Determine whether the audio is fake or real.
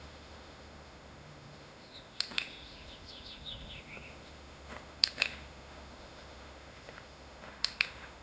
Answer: fake